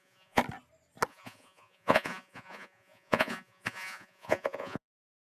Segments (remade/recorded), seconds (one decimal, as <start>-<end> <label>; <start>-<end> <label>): 0.0-0.4 remade; 0.4-1.1 recorded; 1.1-5.2 remade